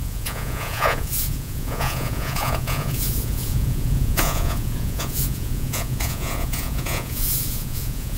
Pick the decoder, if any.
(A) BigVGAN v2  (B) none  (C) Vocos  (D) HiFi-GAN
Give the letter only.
C